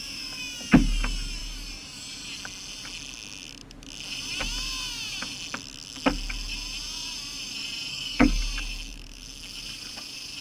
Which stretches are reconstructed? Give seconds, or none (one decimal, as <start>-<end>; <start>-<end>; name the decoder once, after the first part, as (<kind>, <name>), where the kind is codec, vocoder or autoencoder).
7.9-8.4 (codec, SNAC)